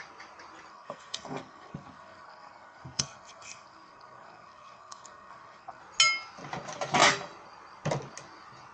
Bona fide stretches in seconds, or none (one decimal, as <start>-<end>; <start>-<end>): 0.0-0.7; 5.8-8.7